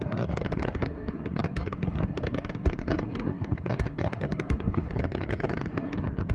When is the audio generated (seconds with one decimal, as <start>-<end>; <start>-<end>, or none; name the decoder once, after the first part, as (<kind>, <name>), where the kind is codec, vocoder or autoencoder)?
0.0-6.3 (codec, SNAC)